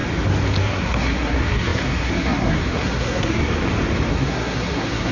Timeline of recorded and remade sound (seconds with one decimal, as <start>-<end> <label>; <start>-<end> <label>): 0.0-0.6 recorded; 0.6-3.4 remade; 3.4-4.1 recorded; 4.1-5.1 remade

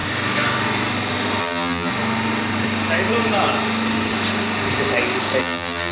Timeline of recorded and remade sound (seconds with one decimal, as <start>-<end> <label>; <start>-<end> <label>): 0.0-1.4 recorded; 1.4-1.9 remade; 1.9-5.4 recorded; 5.4-5.9 remade

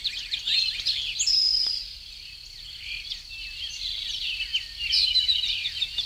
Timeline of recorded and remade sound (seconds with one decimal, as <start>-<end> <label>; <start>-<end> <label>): 0.0-6.1 recorded

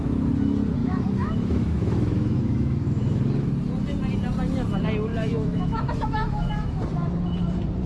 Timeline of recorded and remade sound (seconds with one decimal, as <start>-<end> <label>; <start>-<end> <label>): 0.0-0.8 recorded; 0.8-3.2 remade; 3.2-5.1 recorded; 5.1-6.8 remade; 6.8-7.9 recorded

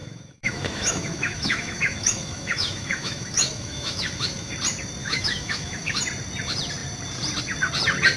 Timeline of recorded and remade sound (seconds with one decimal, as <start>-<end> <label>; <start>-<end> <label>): 0.0-4.5 remade; 4.5-5.0 recorded; 5.0-6.0 remade; 6.0-8.2 recorded

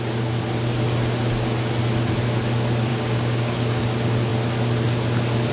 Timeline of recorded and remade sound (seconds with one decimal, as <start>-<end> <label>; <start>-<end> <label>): 0.0-2.9 recorded; 2.9-3.8 remade; 3.8-5.5 recorded